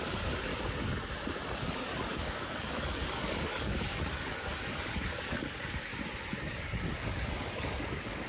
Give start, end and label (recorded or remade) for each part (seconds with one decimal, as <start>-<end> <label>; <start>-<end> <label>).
0.0-0.5 remade; 0.5-1.6 recorded; 1.6-5.9 remade; 5.9-6.4 recorded; 6.4-8.3 remade